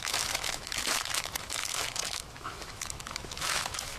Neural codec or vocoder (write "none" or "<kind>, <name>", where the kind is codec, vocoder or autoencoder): autoencoder, DAC-VAE